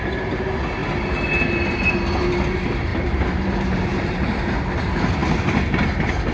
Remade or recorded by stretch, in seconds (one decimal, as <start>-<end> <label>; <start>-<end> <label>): 0.0-2.9 recorded; 2.9-4.5 remade; 4.5-6.3 recorded